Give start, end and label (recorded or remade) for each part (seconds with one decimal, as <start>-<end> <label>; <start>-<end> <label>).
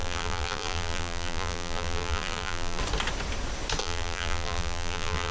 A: 0.0-2.8 remade; 2.8-3.8 recorded; 3.8-5.3 remade